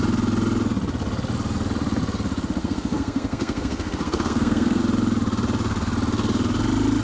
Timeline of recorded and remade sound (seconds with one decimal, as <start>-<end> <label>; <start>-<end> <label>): 0.0-2.6 recorded; 2.6-4.8 remade; 4.8-7.0 recorded